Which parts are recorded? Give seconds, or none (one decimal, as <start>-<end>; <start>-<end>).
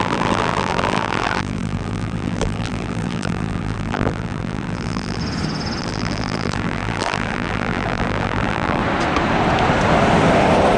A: 5.2-5.8; 8.8-10.8